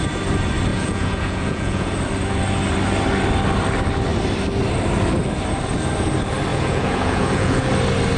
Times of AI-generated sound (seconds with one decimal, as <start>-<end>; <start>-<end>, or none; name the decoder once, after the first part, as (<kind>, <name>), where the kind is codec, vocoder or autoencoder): 0.7-1.9 (vocoder, Vocos); 6.5-7.7